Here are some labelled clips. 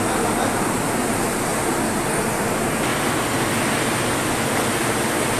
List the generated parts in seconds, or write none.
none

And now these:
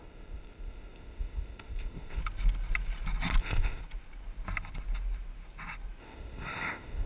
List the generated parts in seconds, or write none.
0.0-2.2; 3.4-3.8; 6.0-7.1

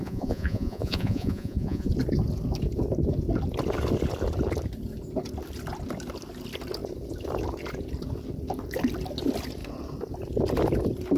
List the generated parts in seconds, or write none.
0.0-1.9

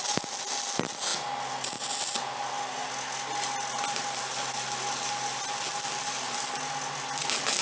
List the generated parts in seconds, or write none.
none

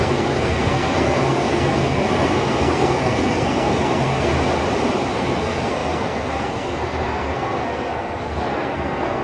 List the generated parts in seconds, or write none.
0.0-4.3; 5.1-9.2

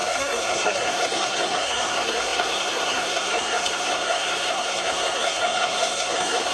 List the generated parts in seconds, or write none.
0.0-6.5

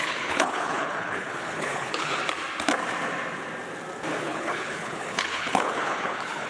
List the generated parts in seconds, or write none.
0.0-2.2; 4.2-6.5

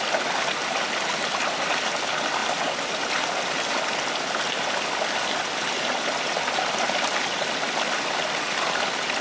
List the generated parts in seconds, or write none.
none